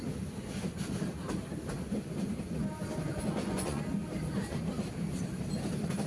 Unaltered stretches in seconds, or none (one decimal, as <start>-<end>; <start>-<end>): 0.0-3.1; 3.8-6.1